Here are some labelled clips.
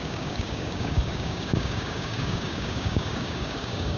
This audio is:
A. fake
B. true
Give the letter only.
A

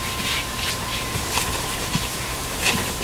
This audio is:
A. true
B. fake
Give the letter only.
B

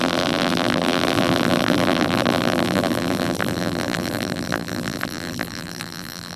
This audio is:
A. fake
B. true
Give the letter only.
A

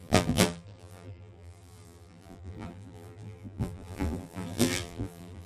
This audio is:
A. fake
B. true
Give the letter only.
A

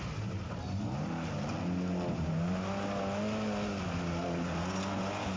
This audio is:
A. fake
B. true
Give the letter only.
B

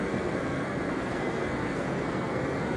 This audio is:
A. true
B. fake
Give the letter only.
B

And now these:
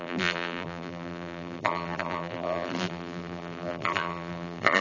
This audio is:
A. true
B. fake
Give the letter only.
B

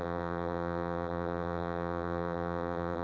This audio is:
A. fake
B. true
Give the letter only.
A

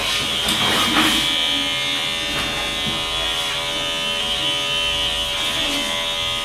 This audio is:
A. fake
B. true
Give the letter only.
B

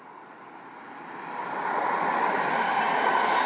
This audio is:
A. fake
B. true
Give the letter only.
B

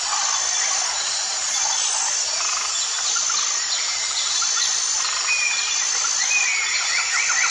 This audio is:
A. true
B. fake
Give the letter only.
A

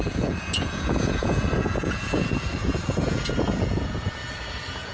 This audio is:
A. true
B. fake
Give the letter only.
B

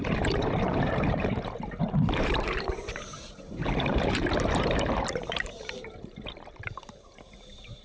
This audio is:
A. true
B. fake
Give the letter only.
B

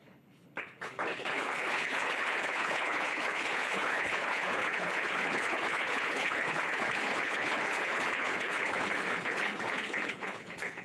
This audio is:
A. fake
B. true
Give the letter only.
A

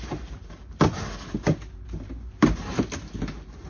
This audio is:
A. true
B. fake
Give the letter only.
A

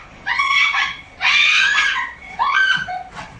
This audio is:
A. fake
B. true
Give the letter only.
A